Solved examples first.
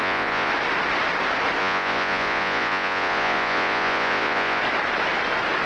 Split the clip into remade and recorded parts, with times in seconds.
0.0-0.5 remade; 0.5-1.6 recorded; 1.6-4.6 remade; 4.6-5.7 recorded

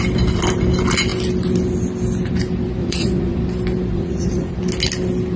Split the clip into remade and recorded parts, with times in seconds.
0.0-2.8 recorded; 2.8-3.4 remade; 3.4-3.9 recorded; 3.9-4.6 remade; 4.6-5.4 recorded

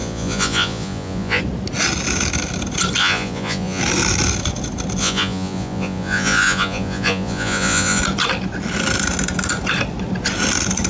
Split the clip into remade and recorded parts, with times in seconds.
0.0-1.4 remade; 1.4-3.0 recorded; 3.0-3.8 remade; 3.8-5.0 recorded; 5.0-8.0 remade; 8.0-10.9 recorded